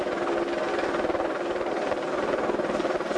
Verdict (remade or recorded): recorded